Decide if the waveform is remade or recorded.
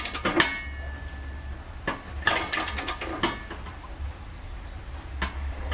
recorded